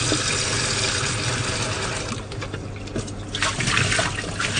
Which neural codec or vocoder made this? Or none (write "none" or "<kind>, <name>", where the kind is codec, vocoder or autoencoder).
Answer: none